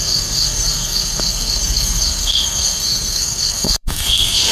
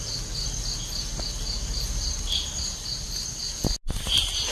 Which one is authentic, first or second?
second